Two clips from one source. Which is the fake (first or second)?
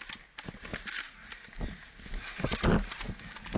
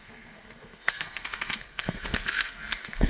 second